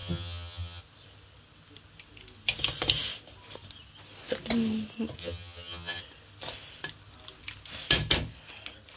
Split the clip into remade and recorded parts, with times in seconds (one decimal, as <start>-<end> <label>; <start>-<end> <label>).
0.0-0.8 remade; 0.8-5.2 recorded; 5.2-6.0 remade; 6.0-9.0 recorded